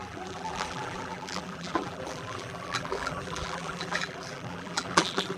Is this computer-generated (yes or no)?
yes